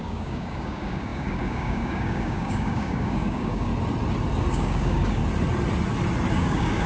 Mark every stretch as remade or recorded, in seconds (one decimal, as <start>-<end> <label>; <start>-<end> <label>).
0.0-3.7 remade; 3.7-4.5 recorded; 4.5-5.2 remade; 5.2-6.3 recorded; 6.3-6.9 remade